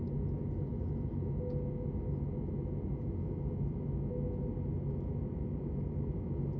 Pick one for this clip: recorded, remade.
recorded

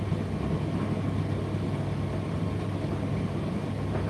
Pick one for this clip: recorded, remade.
recorded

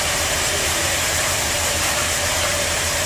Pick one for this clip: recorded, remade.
remade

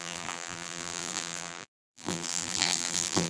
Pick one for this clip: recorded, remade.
remade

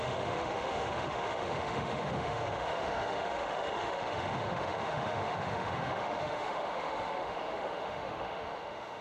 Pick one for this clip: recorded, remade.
remade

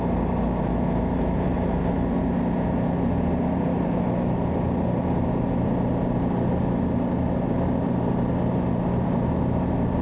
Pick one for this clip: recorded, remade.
recorded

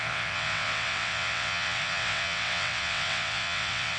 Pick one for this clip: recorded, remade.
remade